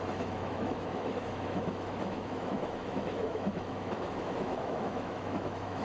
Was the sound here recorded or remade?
remade